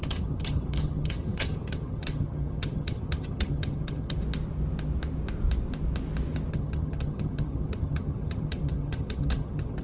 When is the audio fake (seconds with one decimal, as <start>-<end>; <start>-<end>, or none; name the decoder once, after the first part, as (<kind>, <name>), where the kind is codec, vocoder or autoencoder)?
0.0-4.2 (vocoder, HiFi-GAN); 6.5-9.8